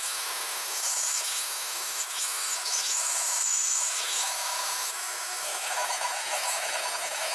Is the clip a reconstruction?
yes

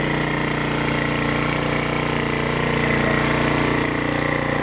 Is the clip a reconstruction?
no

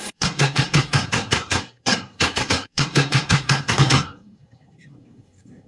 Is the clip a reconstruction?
yes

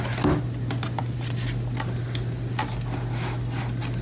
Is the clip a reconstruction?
no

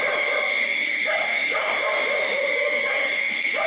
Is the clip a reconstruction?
yes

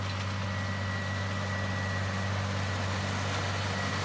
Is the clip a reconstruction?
no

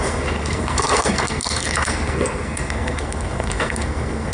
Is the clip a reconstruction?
yes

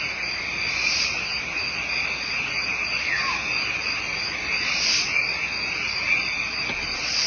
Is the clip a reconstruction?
no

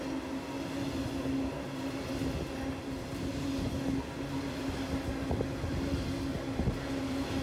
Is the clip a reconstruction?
no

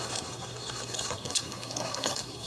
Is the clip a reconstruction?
yes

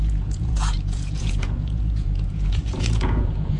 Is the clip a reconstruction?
yes